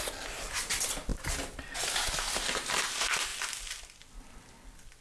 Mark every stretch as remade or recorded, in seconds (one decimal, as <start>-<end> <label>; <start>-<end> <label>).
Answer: 0.0-5.0 recorded